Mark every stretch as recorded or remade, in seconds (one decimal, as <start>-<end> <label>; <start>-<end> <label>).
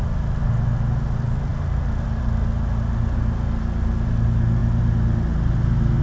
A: 0.0-6.0 recorded